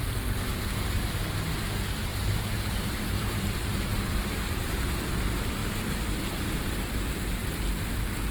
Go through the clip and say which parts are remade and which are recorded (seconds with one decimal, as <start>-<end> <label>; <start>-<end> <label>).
0.0-2.1 recorded; 2.1-4.9 remade; 4.9-8.3 recorded